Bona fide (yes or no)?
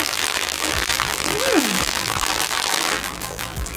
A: no